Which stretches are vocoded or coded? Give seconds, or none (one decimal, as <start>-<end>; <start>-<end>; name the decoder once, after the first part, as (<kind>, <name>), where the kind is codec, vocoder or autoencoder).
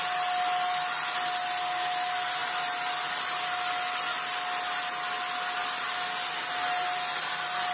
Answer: 2.4-2.9 (vocoder, BigVGAN v2)